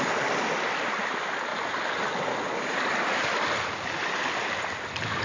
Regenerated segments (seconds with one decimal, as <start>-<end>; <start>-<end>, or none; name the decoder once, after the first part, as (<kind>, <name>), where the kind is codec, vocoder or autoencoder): none